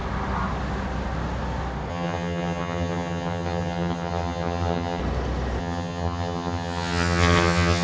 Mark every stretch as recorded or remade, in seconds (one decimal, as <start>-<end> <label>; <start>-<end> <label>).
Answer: 0.0-1.9 recorded; 1.9-5.0 remade; 5.0-5.6 recorded; 5.6-7.8 remade